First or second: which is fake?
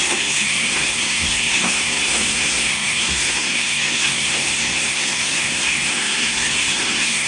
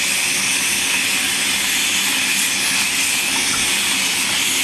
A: first